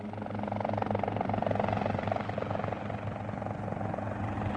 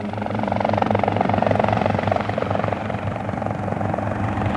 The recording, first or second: first